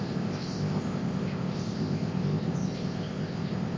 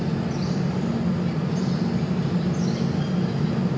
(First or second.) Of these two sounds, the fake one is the first